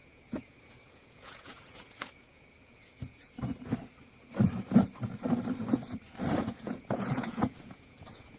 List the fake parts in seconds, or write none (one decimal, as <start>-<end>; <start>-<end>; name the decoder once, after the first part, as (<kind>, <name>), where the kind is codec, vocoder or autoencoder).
0.0-3.2 (vocoder, Vocos); 6.3-8.4